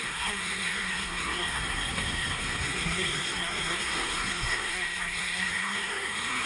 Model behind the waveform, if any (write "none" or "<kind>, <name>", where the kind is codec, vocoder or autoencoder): codec, SNAC